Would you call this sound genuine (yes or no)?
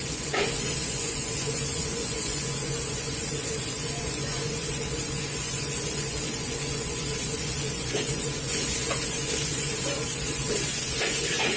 no